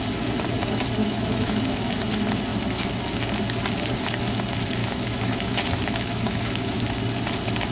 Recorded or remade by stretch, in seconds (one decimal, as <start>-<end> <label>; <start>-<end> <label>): 0.0-1.0 recorded; 1.0-1.9 remade; 1.9-4.8 recorded; 4.8-6.8 remade; 6.8-7.7 recorded